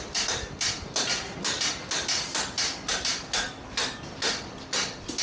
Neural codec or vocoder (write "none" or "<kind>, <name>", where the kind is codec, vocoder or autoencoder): none